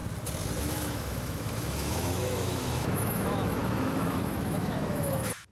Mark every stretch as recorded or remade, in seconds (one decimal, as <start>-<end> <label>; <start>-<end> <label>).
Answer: 0.0-0.6 recorded; 0.6-5.5 remade